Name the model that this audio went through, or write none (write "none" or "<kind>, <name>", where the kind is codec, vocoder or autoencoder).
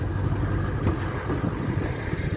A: none